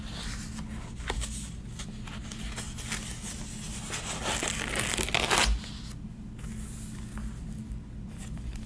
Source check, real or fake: real